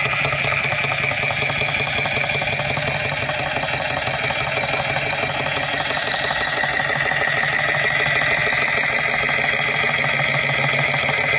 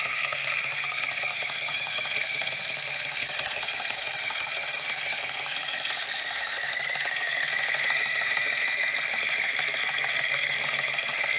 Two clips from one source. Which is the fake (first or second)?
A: second